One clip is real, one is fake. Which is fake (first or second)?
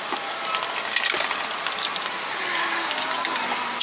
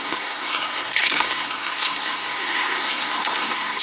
second